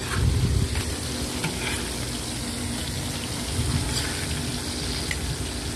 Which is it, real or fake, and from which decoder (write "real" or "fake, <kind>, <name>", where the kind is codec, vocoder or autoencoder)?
real